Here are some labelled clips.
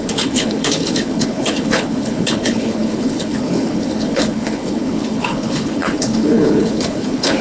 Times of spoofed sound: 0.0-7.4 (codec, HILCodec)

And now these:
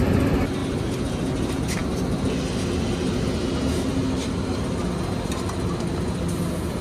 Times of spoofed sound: 0.6-1.3 (vocoder, BigVGAN v2)

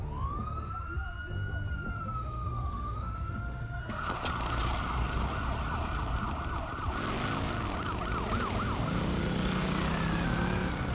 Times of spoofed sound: 1.9-3.8 (autoencoder, DAC-VAE)

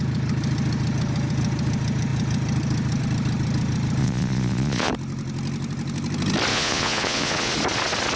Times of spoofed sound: 4.0-4.9 (vocoder, Vocos); 6.5-7.5

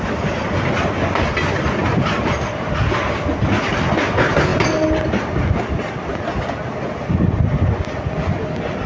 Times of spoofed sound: 1.8-3.7 (vocoder, BigVGAN v2)